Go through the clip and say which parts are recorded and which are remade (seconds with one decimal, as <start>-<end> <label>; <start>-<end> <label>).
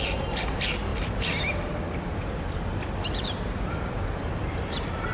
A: 0.0-5.1 recorded